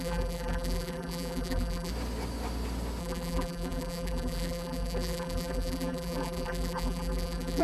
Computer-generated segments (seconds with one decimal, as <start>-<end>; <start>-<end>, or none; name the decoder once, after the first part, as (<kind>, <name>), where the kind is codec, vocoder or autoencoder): 0.0-1.9 (vocoder, BigVGAN v2); 3.0-7.6